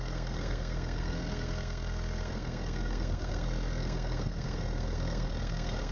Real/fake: fake